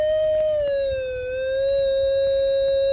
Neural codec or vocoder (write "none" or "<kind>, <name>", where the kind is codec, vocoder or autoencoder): none